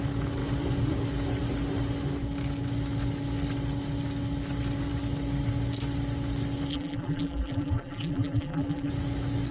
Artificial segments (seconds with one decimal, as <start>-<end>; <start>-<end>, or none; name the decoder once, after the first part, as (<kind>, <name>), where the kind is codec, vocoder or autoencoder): 6.7-8.9 (vocoder, BigVGAN v2)